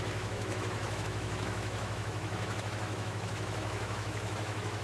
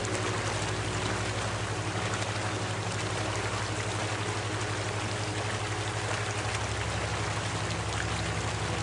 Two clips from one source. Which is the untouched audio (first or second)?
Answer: second